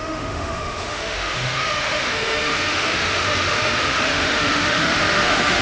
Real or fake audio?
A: fake